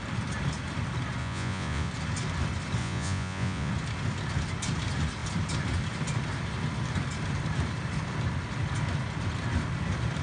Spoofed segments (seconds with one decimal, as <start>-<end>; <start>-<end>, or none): 1.2-1.9; 2.8-3.7